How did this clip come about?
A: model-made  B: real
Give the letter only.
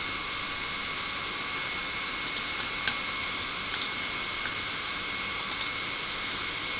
B